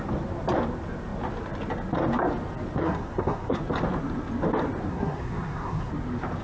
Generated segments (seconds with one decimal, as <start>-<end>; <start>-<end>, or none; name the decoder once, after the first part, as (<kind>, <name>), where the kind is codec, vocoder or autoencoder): 2.8-3.6 (codec, SNAC); 4.9-5.9